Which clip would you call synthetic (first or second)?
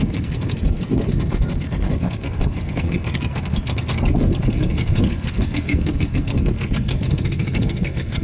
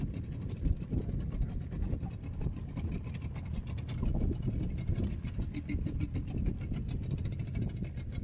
first